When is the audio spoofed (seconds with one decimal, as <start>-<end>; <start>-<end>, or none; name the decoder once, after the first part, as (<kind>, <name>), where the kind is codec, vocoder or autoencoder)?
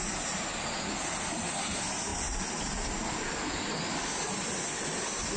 none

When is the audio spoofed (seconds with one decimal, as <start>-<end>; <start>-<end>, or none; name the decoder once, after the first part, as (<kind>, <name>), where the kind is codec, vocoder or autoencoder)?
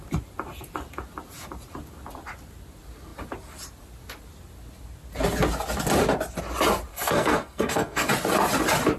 6.9-8.1 (codec, SNAC)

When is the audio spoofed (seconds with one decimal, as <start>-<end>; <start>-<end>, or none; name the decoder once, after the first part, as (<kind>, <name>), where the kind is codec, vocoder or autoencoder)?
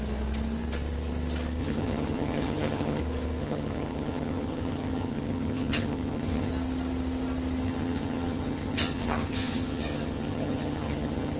1.6-3.0 (vocoder, HiFi-GAN); 3.4-6.5; 7.6-11.4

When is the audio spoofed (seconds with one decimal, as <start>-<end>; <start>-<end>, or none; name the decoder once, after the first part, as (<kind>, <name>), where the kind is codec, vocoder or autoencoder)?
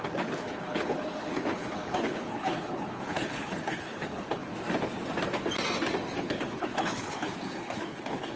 0.0-4.5 (codec, HILCodec); 6.2-8.4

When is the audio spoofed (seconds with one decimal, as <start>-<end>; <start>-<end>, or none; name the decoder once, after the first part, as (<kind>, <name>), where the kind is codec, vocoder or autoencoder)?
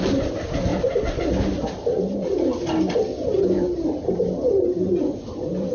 none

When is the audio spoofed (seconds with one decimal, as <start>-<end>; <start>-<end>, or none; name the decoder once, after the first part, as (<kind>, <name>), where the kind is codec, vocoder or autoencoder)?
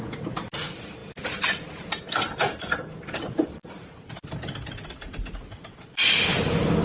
none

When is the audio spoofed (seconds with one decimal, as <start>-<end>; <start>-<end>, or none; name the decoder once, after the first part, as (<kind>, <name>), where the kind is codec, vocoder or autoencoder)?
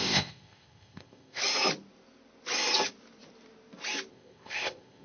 0.0-1.4 (codec, ZipCodec); 4.1-5.0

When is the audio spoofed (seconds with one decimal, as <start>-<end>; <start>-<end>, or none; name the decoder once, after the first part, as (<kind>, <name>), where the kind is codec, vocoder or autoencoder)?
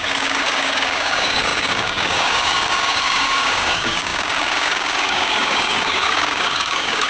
0.0-7.1 (codec, DAC)